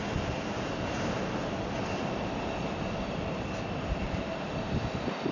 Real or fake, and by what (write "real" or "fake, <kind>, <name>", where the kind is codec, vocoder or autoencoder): real